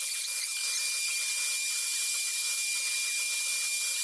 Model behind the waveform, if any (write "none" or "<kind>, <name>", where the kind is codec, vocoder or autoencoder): none